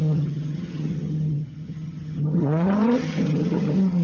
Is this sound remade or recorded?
remade